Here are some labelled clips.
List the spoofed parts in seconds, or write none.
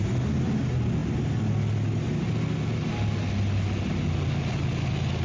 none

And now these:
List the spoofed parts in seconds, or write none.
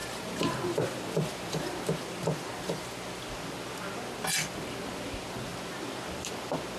0.0-1.8 (vocoder, BigVGAN v2); 2.5-3.2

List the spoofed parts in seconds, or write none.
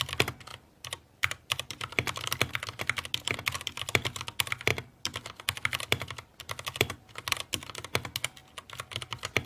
0.5-2.5 (vocoder, BigVGAN v2); 4.7-6.4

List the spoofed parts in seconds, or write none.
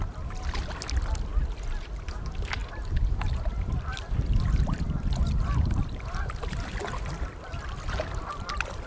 2.6-6.7 (vocoder, BigVGAN v2)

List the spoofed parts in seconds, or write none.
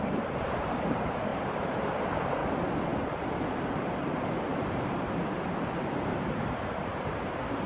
0.0-2.4 (vocoder, BigVGAN v2); 6.2-7.7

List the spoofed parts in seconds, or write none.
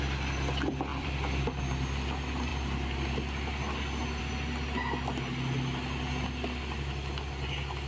0.9-1.6 (vocoder, BigVGAN v2)